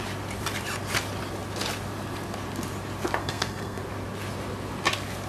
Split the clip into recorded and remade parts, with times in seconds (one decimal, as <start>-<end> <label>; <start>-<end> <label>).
0.0-3.2 recorded; 3.2-3.8 remade; 3.8-5.3 recorded